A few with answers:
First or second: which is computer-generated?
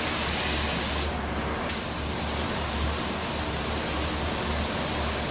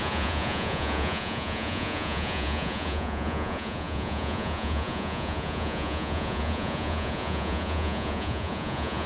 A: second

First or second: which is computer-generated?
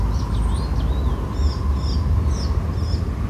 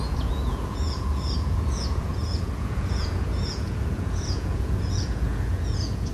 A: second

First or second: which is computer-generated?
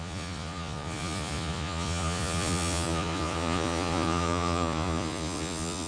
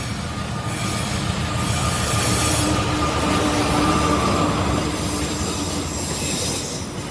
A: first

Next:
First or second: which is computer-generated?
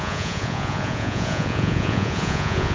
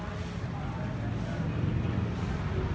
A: first